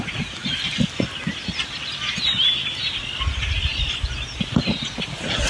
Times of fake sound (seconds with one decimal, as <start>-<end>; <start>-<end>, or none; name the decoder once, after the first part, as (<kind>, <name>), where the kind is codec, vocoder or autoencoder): none